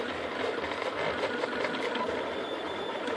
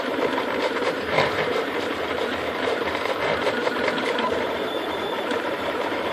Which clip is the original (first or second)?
first